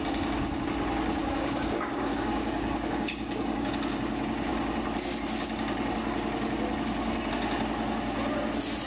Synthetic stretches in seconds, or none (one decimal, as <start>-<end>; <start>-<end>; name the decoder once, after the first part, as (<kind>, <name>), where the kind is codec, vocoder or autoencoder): 1.2-3.7 (codec, DAC)